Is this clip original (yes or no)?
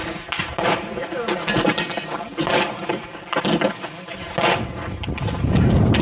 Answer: yes